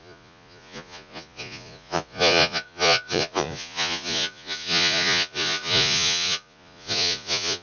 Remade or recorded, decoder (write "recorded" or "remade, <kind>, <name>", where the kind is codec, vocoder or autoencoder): remade, vocoder, Vocos